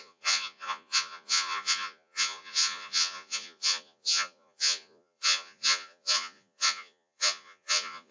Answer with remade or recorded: remade